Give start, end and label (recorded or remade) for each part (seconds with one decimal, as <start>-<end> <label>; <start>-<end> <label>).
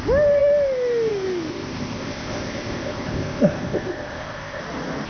0.0-1.5 recorded; 1.5-4.6 remade; 4.6-5.1 recorded